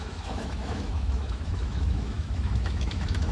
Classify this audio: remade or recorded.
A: remade